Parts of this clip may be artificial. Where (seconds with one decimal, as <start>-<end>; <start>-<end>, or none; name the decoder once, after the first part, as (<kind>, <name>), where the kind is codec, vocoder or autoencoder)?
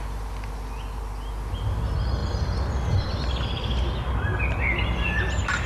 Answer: none